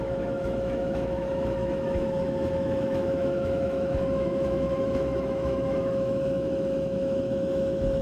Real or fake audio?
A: fake